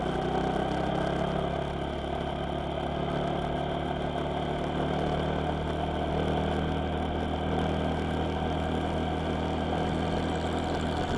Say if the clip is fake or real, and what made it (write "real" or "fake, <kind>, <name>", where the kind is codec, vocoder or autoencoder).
real